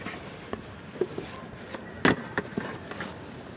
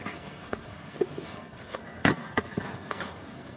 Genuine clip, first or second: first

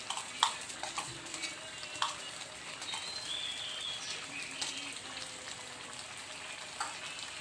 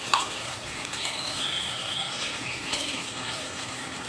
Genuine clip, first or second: first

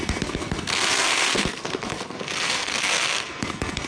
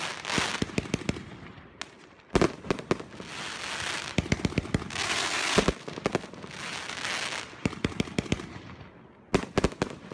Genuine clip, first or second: second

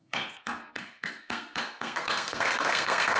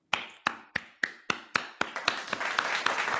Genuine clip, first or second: second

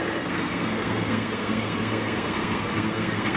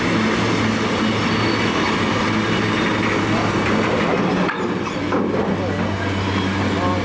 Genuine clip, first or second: second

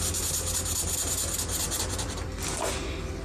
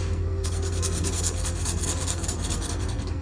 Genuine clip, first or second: first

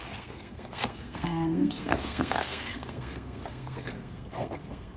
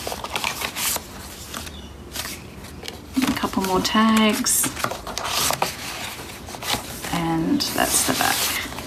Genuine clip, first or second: second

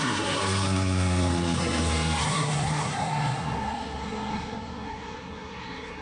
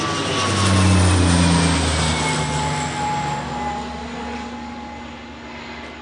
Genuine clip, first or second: second